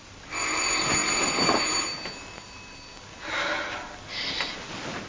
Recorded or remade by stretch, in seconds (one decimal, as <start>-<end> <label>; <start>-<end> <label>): 0.0-5.1 recorded